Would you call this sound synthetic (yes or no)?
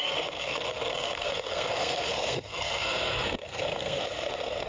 yes